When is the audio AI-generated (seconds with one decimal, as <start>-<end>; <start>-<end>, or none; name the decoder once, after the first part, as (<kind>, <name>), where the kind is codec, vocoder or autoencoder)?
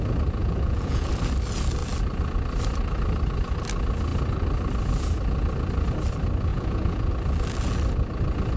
0.4-1.1 (vocoder, Vocos); 6.5-7.1